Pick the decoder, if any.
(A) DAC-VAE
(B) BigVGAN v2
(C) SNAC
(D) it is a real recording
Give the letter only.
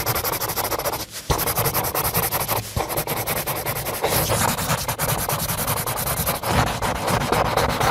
D